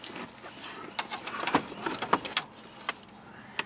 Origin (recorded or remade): recorded